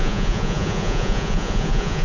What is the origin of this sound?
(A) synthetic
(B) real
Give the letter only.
A